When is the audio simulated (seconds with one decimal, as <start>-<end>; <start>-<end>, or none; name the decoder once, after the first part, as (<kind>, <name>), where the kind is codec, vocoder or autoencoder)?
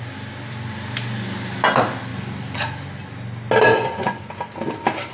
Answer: 3.7-4.2 (vocoder, Vocos)